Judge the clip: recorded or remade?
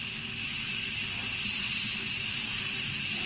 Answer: recorded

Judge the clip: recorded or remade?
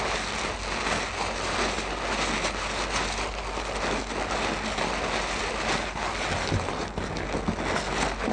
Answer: recorded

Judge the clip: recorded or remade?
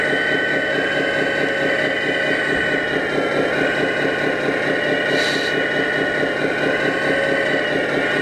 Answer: recorded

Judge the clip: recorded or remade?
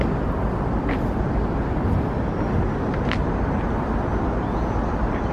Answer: recorded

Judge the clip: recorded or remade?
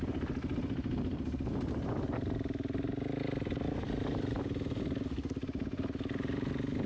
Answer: recorded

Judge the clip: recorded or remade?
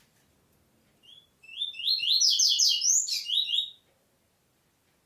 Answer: recorded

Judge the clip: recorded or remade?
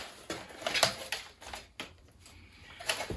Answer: recorded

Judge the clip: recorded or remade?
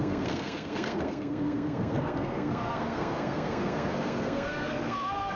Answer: remade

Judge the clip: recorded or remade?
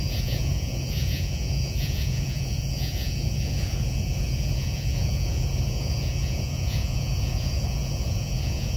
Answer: remade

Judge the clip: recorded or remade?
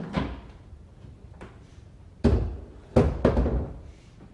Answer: recorded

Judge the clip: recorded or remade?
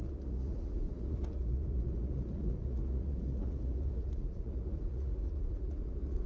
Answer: remade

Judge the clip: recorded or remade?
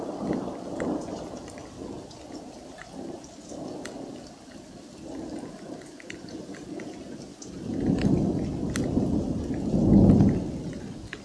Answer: recorded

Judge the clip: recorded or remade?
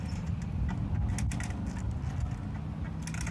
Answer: recorded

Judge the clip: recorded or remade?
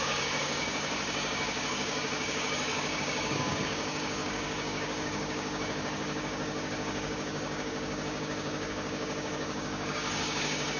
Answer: remade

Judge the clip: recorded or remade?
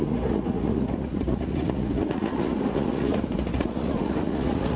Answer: remade